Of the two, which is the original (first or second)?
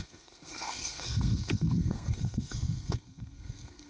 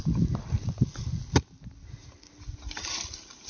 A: second